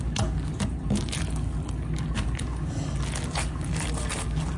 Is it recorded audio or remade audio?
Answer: recorded